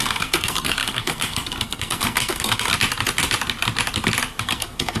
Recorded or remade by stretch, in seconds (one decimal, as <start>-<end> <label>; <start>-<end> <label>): 0.0-2.7 remade; 2.7-4.4 recorded; 4.4-5.0 remade